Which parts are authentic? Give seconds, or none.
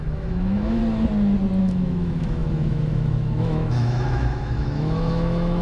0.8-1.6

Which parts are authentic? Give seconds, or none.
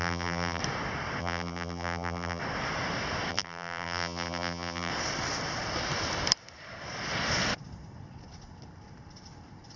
0.6-1.2; 2.4-3.3; 4.9-9.8